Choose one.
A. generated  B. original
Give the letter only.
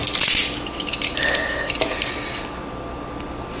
B